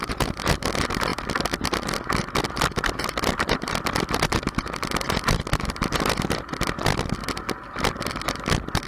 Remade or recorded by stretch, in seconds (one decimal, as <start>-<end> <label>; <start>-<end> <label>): 0.0-1.1 remade; 1.1-2.5 recorded; 2.5-7.2 remade; 7.2-8.3 recorded; 8.3-8.9 remade